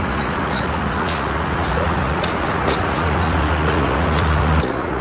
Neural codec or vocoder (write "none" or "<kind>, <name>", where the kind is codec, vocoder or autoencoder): vocoder, Vocos